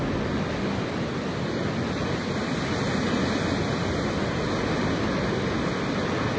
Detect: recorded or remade recorded